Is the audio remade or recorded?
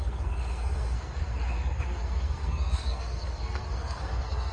remade